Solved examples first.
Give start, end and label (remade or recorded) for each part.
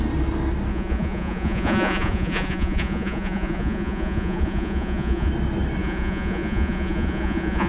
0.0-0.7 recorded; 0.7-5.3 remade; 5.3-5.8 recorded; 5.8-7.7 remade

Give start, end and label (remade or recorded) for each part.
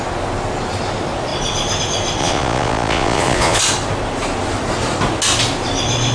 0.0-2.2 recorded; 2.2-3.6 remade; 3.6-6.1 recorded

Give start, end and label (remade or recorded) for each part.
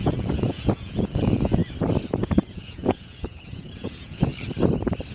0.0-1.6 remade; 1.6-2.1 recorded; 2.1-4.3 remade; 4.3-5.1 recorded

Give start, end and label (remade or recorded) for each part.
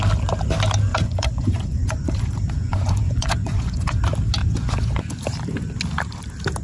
0.0-0.9 recorded; 0.9-4.0 remade; 4.0-4.4 recorded; 4.4-5.0 remade; 5.0-6.6 recorded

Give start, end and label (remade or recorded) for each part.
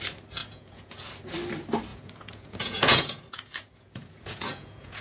0.0-0.4 recorded; 0.4-1.1 remade; 1.1-1.9 recorded; 1.9-5.0 remade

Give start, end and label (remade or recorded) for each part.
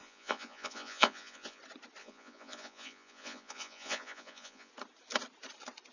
0.0-1.6 remade; 1.6-2.0 recorded; 2.0-4.7 remade; 4.7-5.9 recorded